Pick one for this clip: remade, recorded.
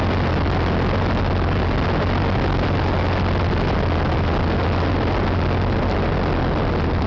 recorded